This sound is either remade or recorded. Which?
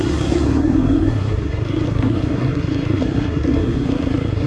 remade